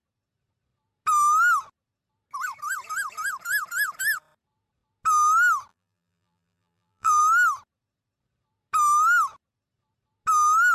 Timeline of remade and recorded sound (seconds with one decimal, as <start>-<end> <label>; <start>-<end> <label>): 0.0-5.7 recorded; 5.7-7.2 remade; 7.2-10.7 recorded